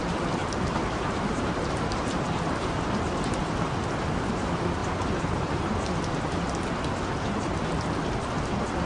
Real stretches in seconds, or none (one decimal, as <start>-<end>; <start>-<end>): 0.0-0.4; 3.4-4.8; 6.2-8.9